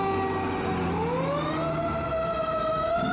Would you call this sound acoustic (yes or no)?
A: yes